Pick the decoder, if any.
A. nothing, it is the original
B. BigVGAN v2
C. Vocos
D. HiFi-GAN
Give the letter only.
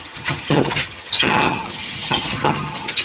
D